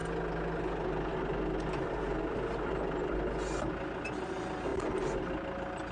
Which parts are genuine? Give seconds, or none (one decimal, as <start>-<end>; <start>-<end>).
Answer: 0.0-5.9